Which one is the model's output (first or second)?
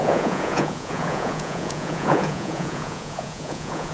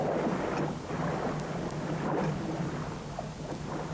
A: first